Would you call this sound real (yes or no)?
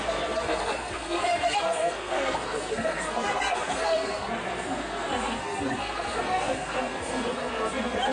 no